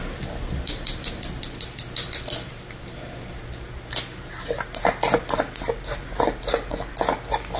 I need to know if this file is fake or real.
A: real